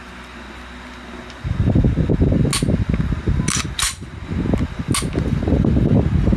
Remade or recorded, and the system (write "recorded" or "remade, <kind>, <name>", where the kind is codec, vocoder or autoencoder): recorded